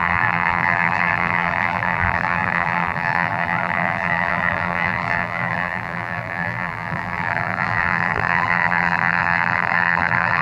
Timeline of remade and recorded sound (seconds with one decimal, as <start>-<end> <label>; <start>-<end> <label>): 0.0-10.4 remade

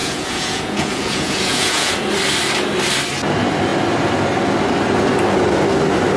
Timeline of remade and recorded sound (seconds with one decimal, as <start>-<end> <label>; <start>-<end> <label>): 0.0-1.9 remade; 1.9-6.2 recorded

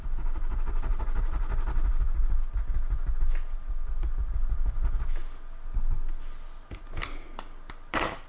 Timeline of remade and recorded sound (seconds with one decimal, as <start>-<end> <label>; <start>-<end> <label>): 0.0-8.3 recorded

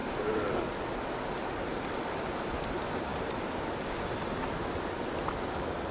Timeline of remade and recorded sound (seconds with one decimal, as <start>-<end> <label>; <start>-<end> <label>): 0.0-5.9 recorded

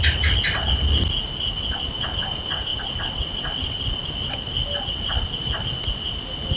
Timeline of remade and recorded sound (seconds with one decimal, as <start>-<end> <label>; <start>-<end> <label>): 0.0-6.6 recorded

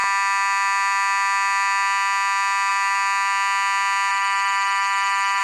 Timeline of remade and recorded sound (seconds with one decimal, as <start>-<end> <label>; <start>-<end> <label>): 0.0-4.1 recorded; 4.1-5.4 remade

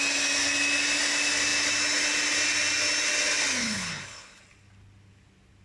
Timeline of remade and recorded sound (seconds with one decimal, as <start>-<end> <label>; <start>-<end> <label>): 0.0-3.6 recorded; 3.6-4.4 remade; 4.4-5.6 recorded

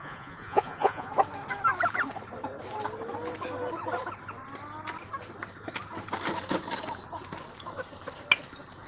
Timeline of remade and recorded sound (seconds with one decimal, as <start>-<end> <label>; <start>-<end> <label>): 0.0-1.1 remade; 1.1-8.9 recorded